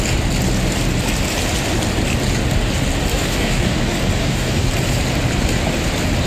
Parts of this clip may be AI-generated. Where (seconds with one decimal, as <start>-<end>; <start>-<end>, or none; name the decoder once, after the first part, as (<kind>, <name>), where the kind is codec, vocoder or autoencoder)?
3.1-3.8 (codec, DAC); 4.2-4.7